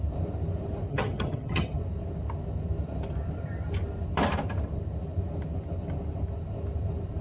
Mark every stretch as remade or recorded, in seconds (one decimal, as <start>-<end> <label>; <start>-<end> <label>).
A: 0.0-0.9 recorded; 0.9-1.8 remade; 1.8-7.2 recorded